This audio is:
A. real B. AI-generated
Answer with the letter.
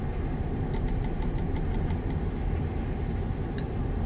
A